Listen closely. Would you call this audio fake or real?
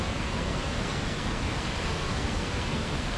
fake